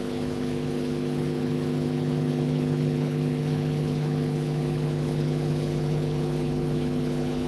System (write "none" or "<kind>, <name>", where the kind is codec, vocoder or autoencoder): codec, HILCodec